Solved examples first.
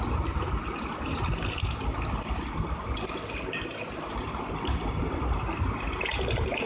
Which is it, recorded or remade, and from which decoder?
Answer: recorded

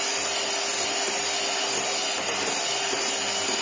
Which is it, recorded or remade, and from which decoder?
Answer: recorded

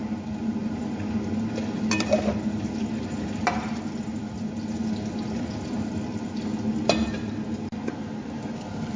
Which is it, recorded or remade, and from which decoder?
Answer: recorded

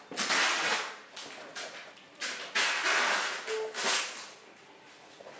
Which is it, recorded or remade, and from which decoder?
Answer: recorded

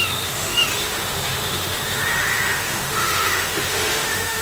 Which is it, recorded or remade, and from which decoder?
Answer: remade, autoencoder, DAC-VAE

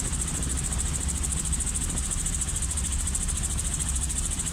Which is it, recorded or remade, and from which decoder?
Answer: recorded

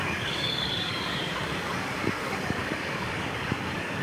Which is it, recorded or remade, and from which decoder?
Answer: remade, codec, DAC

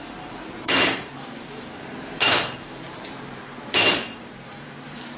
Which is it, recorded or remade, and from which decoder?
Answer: remade, vocoder, BigVGAN v2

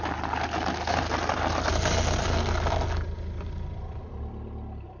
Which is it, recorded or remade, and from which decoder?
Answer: recorded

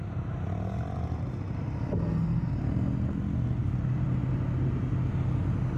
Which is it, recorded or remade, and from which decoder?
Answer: recorded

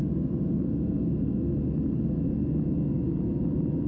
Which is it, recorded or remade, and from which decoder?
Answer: recorded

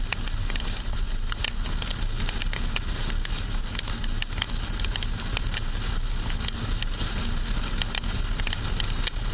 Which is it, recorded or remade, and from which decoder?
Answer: recorded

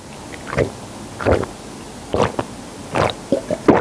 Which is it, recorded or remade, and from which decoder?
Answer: recorded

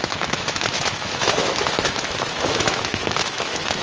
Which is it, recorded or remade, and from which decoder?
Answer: remade, autoencoder, DAC-VAE